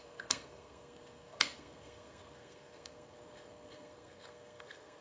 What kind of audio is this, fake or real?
fake